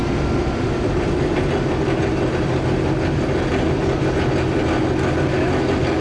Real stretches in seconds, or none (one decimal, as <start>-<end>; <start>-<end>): 0.0-6.0